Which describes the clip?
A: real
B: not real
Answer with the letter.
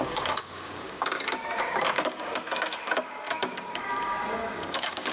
B